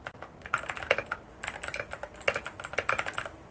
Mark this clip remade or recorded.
recorded